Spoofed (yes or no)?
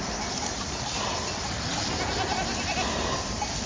no